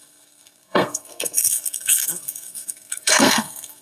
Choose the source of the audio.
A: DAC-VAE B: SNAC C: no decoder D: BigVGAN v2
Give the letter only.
B